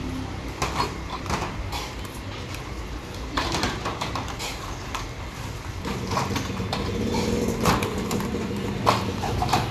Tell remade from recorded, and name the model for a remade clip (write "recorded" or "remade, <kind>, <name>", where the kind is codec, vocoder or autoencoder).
recorded